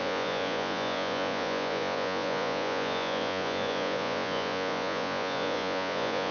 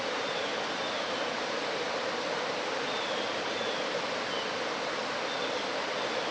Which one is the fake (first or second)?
first